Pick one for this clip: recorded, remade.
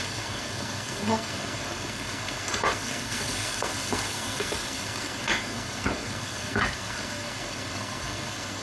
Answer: remade